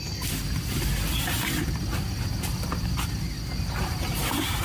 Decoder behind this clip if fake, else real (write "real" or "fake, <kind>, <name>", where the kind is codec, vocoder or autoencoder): real